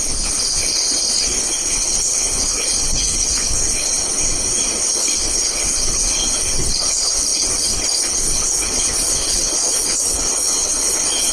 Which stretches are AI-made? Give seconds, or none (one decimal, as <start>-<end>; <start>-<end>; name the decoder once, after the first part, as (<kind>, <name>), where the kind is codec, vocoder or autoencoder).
0.0-4.0 (codec, HILCodec); 4.9-11.3

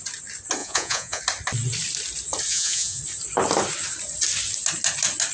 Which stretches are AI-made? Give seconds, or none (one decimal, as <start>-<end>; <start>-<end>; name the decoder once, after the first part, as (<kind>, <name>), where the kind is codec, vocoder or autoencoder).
0.6-1.2 (vocoder, Vocos); 2.5-3.0

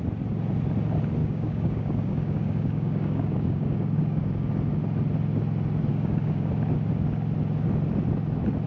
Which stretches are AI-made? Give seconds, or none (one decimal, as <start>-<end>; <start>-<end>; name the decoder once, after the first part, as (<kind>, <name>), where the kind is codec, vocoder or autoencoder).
1.2-4.5 (codec, DAC); 5.9-6.5

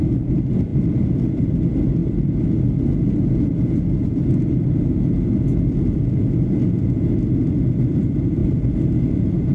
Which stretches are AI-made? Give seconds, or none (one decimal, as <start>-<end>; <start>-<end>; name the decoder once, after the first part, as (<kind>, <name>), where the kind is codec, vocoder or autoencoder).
0.0-2.0 (vocoder, BigVGAN v2); 7.0-9.5

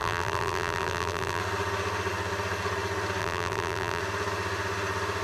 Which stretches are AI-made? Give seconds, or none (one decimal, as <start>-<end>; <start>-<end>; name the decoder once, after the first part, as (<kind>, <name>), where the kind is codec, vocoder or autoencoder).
0.0-1.4 (vocoder, BigVGAN v2); 3.2-4.0